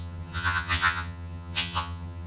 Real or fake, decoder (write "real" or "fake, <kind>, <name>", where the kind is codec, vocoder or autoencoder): fake, vocoder, HiFi-GAN